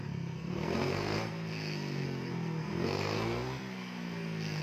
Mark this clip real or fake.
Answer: fake